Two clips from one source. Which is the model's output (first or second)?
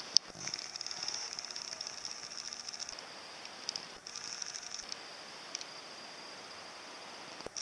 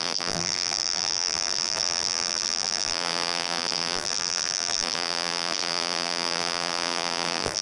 second